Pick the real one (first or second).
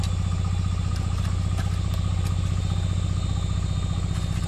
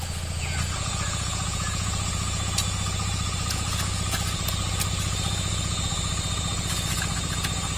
first